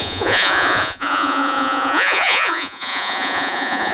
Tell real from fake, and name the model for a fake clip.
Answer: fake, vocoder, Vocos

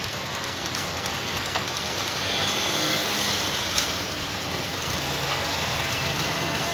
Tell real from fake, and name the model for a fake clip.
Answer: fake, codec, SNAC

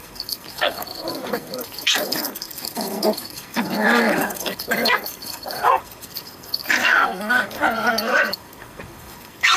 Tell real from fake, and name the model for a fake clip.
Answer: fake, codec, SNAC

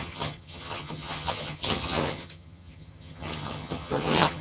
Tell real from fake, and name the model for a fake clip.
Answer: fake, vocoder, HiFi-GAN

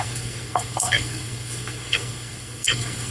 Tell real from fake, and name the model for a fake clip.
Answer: fake, codec, SNAC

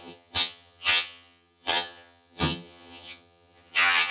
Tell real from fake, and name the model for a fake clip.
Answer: fake, vocoder, HiFi-GAN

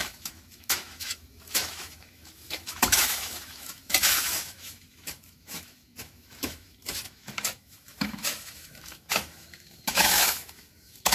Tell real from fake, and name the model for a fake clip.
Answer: fake, autoencoder, DAC-VAE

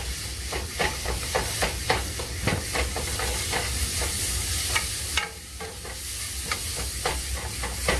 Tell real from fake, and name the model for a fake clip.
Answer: real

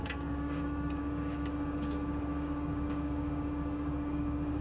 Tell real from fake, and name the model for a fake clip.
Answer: fake, codec, DAC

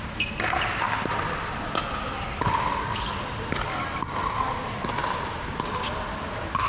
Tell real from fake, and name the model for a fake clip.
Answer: real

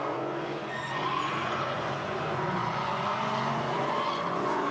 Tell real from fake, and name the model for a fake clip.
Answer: fake, vocoder, Vocos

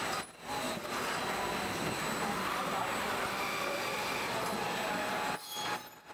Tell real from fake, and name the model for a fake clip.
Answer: real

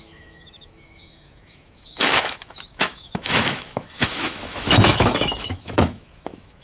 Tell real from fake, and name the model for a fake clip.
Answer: fake, autoencoder, DAC-VAE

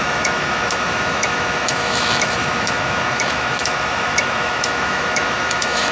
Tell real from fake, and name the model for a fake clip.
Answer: fake, autoencoder, DAC-VAE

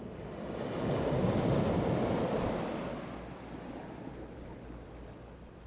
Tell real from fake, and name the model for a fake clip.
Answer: real